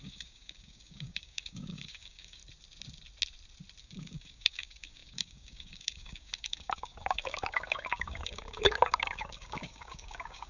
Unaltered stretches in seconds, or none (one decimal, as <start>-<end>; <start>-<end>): 2.4-3.8